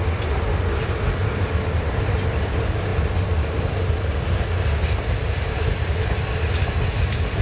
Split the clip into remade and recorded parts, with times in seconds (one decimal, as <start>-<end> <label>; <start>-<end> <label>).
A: 0.0-7.4 recorded